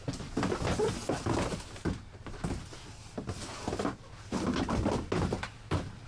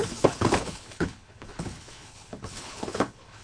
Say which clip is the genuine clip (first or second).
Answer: first